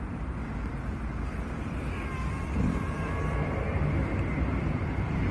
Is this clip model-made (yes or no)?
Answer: no